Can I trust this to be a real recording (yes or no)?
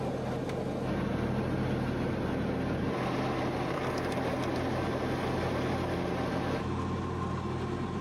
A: yes